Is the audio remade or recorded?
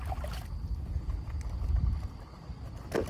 recorded